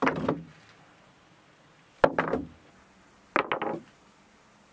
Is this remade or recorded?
recorded